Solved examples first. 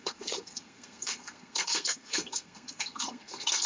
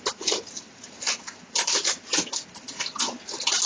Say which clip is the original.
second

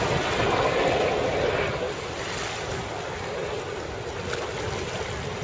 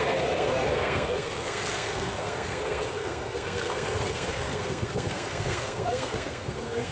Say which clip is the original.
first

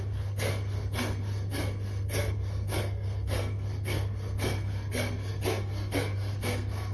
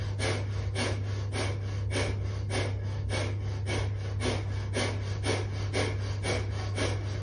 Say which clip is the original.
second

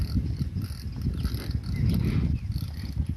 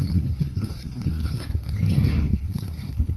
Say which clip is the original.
first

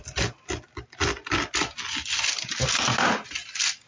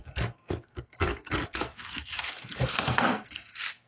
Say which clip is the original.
first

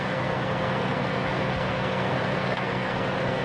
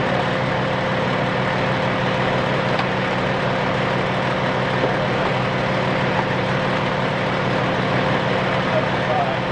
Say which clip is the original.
second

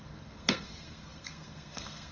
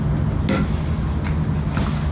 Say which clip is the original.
second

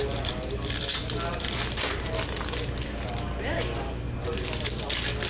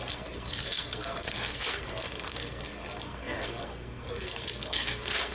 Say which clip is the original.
first